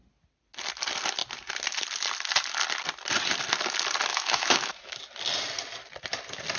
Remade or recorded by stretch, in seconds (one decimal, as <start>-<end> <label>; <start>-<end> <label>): 0.0-4.1 recorded; 4.1-5.0 remade; 5.0-6.6 recorded